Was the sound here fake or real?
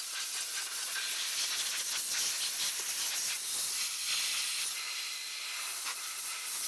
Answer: real